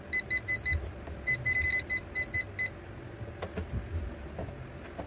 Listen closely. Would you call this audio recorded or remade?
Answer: recorded